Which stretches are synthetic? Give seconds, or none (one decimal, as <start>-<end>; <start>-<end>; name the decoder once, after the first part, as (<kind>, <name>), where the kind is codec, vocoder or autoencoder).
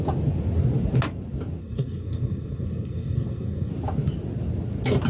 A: 1.6-3.7 (codec, SNAC)